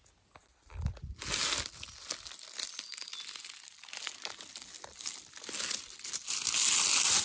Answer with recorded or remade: recorded